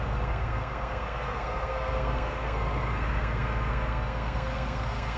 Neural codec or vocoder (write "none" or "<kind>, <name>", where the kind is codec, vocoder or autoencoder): codec, SNAC